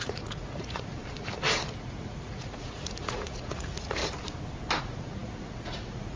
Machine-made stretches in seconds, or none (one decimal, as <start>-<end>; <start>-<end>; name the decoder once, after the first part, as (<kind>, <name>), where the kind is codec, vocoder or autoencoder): 0.0-1.0 (vocoder, Vocos); 1.8-4.0; 4.8-6.2